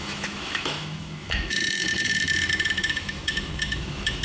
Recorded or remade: remade